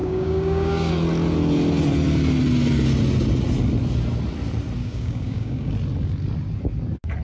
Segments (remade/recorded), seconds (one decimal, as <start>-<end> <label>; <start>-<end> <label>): 0.0-0.9 remade; 0.9-4.8 recorded; 4.8-5.7 remade; 5.7-7.2 recorded